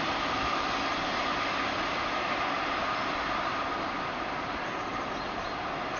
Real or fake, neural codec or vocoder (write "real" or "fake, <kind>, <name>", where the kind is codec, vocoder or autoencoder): real